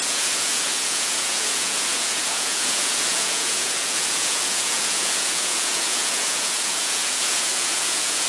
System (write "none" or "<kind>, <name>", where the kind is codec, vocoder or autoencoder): vocoder, Vocos